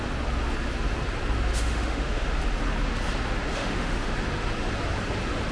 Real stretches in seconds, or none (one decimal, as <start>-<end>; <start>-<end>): 0.0-1.5; 2.4-3.5; 4.1-5.5